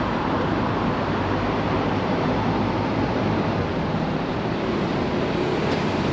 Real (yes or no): no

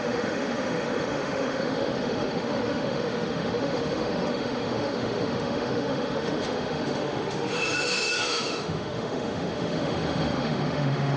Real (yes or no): no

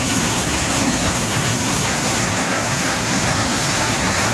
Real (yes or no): no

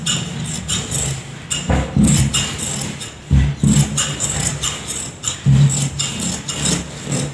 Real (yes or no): yes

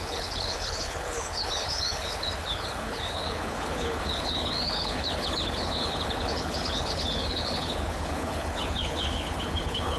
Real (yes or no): no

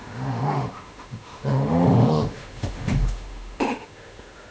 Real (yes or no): no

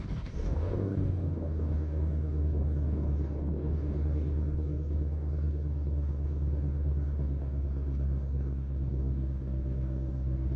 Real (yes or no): no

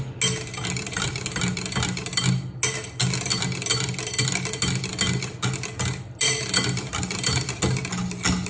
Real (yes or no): yes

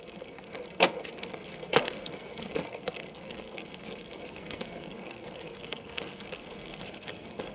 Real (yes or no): no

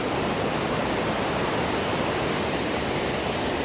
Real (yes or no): yes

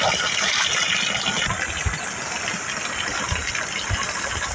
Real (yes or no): yes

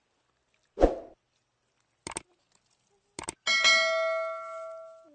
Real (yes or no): yes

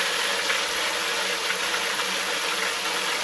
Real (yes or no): yes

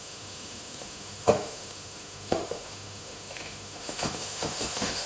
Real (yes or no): no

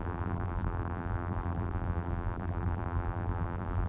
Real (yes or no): no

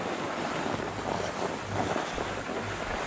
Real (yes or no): yes